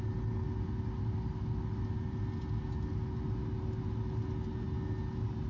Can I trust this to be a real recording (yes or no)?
yes